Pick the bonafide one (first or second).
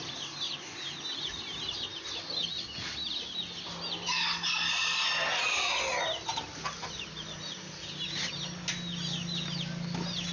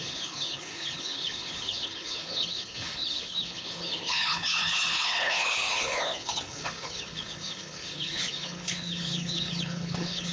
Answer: first